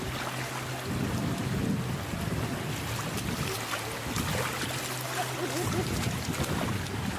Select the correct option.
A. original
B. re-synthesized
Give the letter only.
A